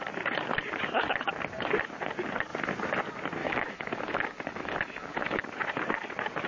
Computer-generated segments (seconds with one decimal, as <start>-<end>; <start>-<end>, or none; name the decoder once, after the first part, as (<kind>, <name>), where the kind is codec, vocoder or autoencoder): 3.4-5.4 (autoencoder, DAC-VAE)